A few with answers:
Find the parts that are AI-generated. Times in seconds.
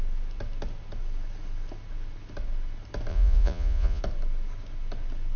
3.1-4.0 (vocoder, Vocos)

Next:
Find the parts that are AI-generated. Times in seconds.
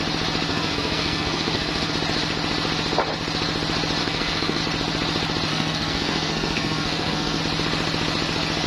0.5-1.9 (codec, SNAC); 4.0-4.6; 5.5-7.4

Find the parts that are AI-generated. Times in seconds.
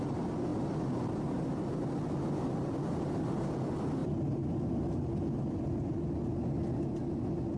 none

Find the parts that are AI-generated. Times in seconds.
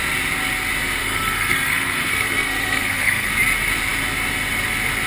1.0-3.3 (codec, SNAC)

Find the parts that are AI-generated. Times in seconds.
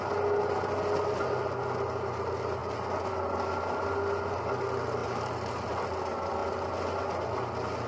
5.0-5.7 (vocoder, BigVGAN v2)